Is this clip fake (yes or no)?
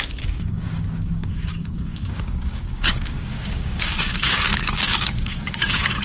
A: yes